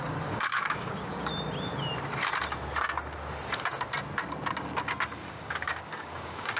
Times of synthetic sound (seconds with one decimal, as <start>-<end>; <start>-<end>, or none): 0.0-1.3; 5.3-6.6